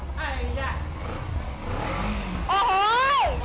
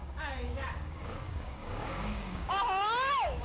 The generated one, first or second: second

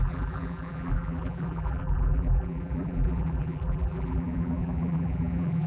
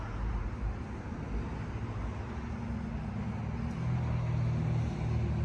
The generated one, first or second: first